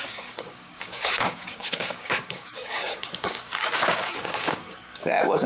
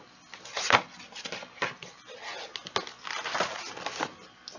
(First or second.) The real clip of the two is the second